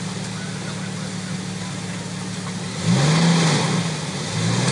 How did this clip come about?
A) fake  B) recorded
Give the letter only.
B